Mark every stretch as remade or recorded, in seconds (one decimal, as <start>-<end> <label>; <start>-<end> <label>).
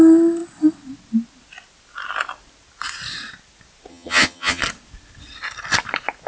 0.0-3.9 recorded; 3.9-4.6 remade; 4.6-6.3 recorded